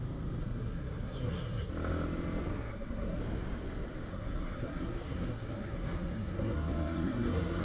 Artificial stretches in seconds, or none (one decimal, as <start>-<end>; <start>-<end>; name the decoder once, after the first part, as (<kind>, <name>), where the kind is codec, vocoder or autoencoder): 0.4-1.7 (codec, SNAC); 2.5-3.2; 4.1-7.6